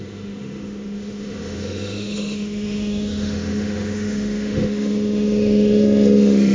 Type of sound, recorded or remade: remade